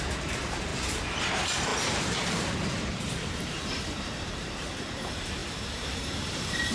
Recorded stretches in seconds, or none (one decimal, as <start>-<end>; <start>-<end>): none